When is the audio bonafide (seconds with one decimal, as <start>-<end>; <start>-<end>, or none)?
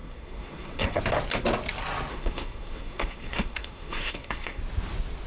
1.0-2.1; 4.6-5.3